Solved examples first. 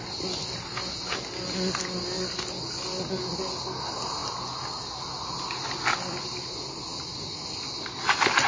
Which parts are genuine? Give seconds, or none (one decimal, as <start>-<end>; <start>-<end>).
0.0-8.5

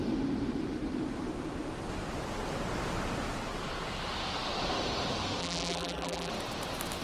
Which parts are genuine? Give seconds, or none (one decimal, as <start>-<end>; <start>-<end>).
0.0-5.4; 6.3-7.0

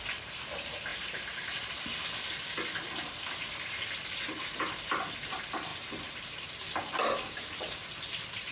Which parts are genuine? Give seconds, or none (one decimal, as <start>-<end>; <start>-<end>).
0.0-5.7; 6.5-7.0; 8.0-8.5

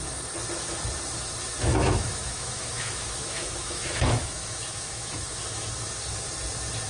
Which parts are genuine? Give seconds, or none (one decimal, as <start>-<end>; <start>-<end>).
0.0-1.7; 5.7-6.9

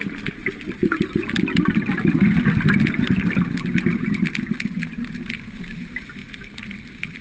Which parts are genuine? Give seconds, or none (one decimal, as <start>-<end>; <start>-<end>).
0.0-6.2

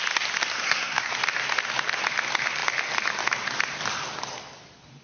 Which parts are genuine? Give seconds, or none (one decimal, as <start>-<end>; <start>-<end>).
0.0-0.5; 1.1-5.0